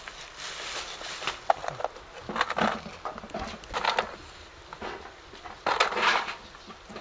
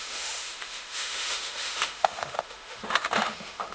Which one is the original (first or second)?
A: first